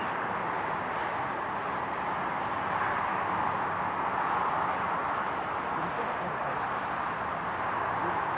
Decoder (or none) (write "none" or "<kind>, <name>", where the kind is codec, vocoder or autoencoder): none